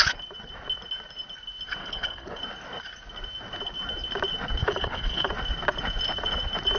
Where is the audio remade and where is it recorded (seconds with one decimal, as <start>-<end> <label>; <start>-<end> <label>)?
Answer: 0.0-1.8 recorded; 1.8-2.4 remade; 2.4-4.6 recorded; 4.6-5.3 remade; 5.3-6.8 recorded

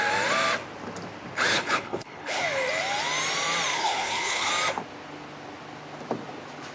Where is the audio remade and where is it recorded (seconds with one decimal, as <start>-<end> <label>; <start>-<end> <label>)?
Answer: 0.0-1.5 recorded; 1.5-2.4 remade; 2.4-3.7 recorded; 3.7-4.5 remade; 4.5-6.7 recorded

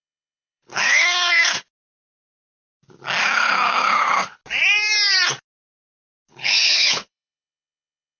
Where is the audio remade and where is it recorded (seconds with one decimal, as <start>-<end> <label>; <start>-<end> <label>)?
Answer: 0.0-1.4 remade; 1.4-3.2 recorded; 3.2-4.4 remade; 4.4-6.3 recorded; 6.3-8.2 remade

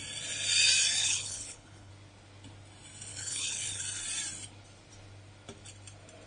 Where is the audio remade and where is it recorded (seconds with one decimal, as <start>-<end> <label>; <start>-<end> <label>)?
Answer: 0.0-1.0 recorded; 1.0-1.9 remade; 1.9-3.1 recorded; 3.1-3.8 remade; 3.8-6.3 recorded